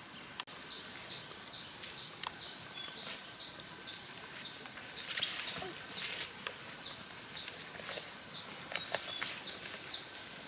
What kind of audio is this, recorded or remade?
recorded